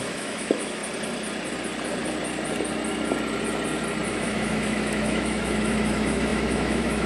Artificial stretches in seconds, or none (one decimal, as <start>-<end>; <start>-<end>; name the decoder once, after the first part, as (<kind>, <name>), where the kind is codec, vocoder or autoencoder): 0.0-0.8 (autoencoder, DAC-VAE); 4.1-7.1